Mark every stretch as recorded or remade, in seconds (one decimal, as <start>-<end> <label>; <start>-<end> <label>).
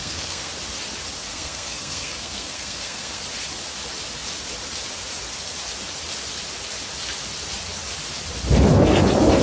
0.0-0.5 remade; 0.5-1.3 recorded; 1.3-3.2 remade; 3.2-9.4 recorded